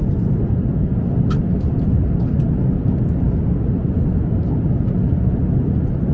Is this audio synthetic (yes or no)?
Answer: no